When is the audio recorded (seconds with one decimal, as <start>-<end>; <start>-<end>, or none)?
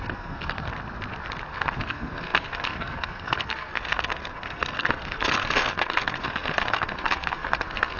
0.7-1.5